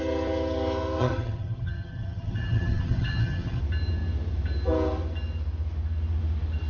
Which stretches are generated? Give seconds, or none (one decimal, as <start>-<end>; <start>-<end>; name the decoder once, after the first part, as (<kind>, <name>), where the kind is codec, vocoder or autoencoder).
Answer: 1.0-3.6 (vocoder, HiFi-GAN)